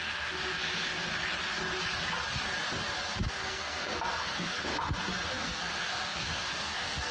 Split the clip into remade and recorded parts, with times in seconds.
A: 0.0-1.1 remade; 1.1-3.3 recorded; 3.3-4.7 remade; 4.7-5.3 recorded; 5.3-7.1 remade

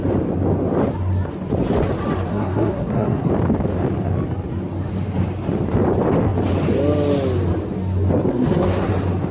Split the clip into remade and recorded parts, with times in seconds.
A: 0.0-2.3 recorded; 2.3-3.3 remade; 3.3-8.3 recorded; 8.3-8.9 remade; 8.9-9.3 recorded

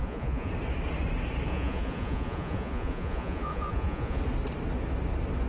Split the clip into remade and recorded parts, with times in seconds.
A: 0.0-0.5 remade; 0.5-1.5 recorded; 1.5-4.2 remade; 4.2-5.5 recorded

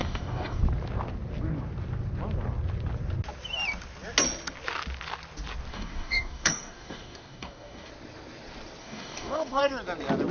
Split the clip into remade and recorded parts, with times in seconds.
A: 0.0-0.6 remade; 0.6-5.7 recorded; 5.7-7.9 remade; 7.9-8.8 recorded; 8.8-9.6 remade; 9.6-10.3 recorded